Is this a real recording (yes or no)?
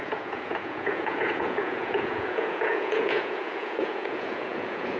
no